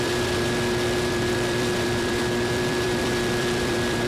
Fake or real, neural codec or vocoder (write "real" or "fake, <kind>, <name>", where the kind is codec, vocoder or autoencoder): fake, vocoder, BigVGAN v2